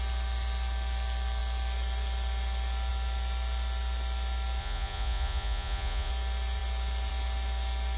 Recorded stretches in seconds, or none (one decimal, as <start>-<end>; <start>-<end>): 0.0-4.6; 6.1-8.0